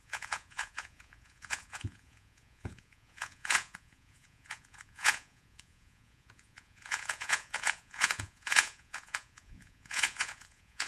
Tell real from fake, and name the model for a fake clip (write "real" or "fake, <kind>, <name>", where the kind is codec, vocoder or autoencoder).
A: fake, vocoder, Vocos